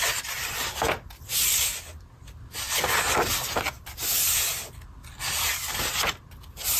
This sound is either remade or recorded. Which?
recorded